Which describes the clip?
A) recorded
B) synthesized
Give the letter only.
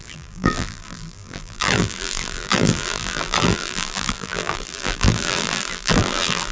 B